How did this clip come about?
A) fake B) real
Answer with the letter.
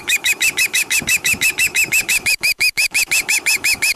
A